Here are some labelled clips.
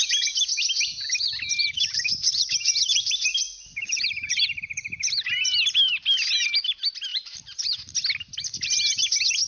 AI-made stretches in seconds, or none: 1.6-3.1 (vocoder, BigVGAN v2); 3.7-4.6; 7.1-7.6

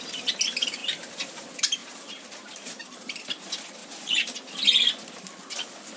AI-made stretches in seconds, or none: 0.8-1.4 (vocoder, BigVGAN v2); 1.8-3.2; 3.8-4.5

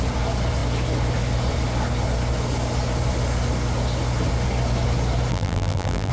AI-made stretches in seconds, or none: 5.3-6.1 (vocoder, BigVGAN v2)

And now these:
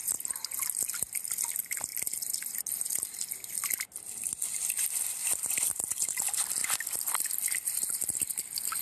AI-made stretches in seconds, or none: 5.2-6.0 (vocoder, BigVGAN v2); 6.6-8.4